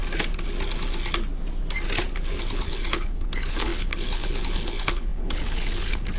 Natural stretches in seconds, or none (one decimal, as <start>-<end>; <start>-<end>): 0.0-2.4